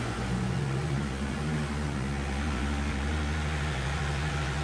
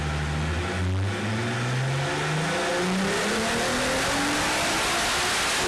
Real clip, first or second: second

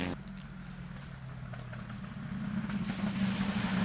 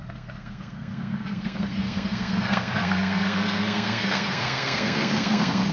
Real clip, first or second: first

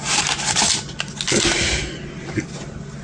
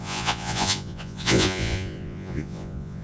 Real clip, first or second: first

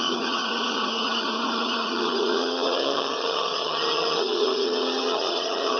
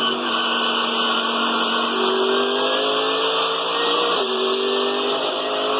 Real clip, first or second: second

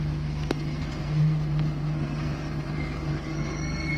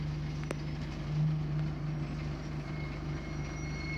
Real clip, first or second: second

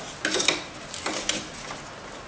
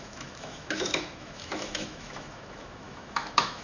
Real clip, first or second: first